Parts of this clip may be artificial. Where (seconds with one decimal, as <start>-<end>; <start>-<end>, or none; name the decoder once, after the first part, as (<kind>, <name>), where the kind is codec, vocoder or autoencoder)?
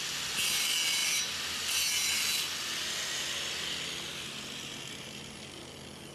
none